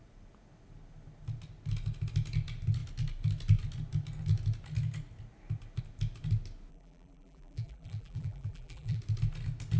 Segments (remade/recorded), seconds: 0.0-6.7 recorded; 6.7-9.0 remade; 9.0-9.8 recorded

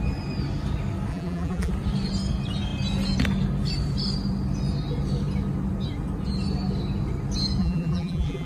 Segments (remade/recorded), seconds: 0.0-1.1 recorded; 1.1-1.7 remade; 1.7-7.6 recorded; 7.6-8.5 remade